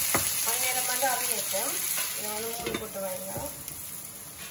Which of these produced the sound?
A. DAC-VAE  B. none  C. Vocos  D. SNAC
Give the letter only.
B